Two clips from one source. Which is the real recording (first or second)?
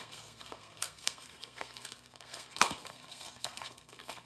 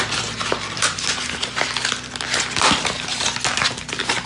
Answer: second